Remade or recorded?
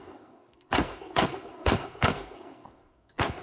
remade